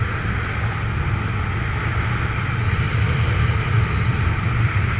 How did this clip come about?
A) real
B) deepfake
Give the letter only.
A